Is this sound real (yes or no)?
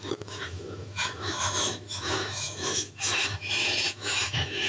no